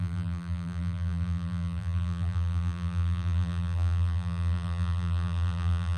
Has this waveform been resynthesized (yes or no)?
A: yes